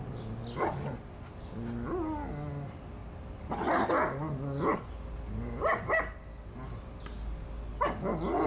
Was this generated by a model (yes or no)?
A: no